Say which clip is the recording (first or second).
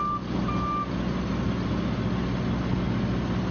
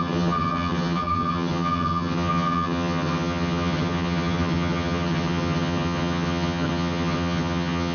first